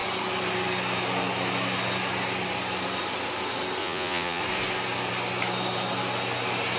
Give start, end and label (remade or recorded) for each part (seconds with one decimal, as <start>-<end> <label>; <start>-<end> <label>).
0.0-3.8 recorded; 3.8-4.4 remade; 4.4-6.8 recorded